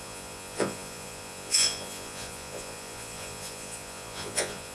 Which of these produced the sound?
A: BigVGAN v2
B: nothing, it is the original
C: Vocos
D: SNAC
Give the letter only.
C